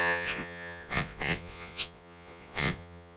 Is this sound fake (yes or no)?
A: yes